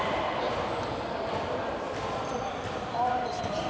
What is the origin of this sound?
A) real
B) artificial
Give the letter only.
B